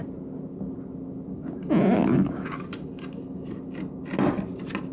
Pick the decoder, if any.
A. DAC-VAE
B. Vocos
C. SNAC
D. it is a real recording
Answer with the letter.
D